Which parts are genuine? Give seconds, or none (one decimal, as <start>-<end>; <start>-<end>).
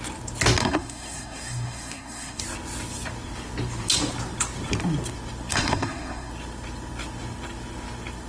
0.0-0.6; 2.4-5.5; 6.3-8.3